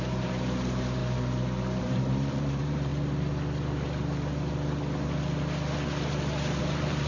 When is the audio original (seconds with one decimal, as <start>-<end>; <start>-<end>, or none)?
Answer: 1.0-1.8; 2.9-6.6